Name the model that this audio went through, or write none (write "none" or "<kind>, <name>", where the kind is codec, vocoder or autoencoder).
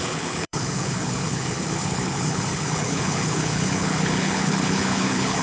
codec, HILCodec